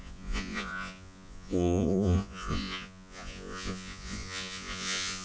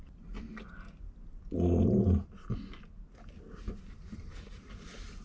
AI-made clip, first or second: first